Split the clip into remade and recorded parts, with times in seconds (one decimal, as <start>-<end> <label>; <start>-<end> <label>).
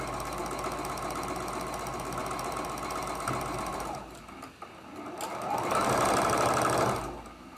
0.0-3.7 recorded; 3.7-4.2 remade; 4.2-7.6 recorded